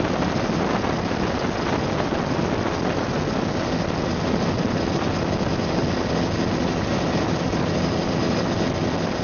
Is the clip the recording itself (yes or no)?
yes